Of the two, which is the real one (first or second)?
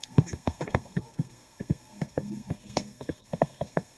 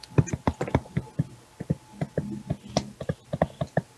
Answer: second